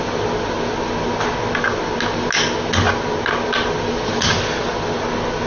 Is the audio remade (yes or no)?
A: no